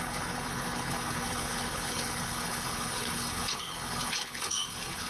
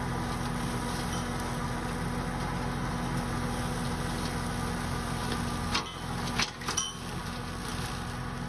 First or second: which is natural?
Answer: second